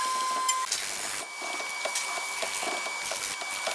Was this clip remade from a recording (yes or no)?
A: no